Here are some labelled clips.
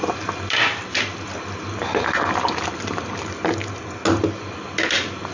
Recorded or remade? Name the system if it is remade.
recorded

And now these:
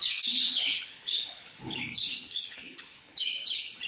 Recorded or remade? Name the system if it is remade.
remade, codec, HILCodec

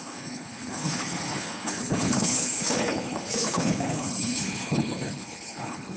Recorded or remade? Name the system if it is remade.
remade, codec, HILCodec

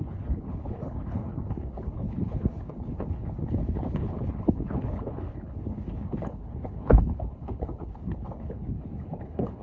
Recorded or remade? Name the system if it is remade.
remade, codec, HILCodec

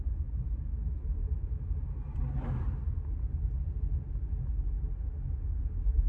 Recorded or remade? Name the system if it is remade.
recorded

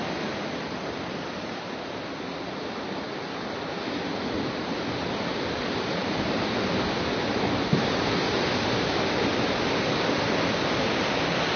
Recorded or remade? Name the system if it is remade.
recorded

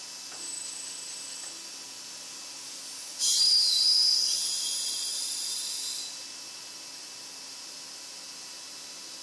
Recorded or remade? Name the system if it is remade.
recorded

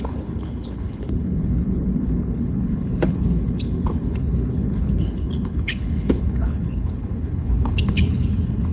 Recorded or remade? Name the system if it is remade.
remade, codec, HILCodec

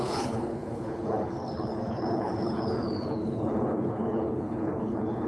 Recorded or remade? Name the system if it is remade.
remade, codec, HILCodec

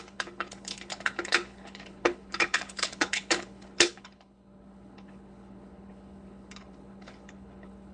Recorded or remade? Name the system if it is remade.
remade, codec, HILCodec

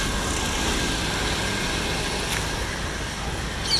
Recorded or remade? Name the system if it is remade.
recorded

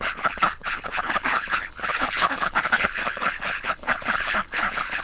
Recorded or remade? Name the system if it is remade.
remade, codec, HILCodec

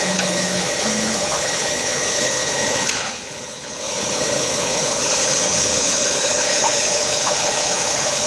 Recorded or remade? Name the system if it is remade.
remade, codec, HILCodec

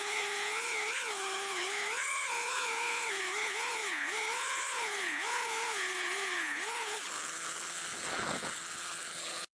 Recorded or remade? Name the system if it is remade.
remade, codec, HILCodec